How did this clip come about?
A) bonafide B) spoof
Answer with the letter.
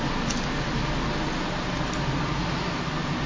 A